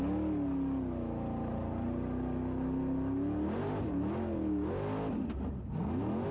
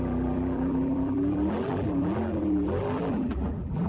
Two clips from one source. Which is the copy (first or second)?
second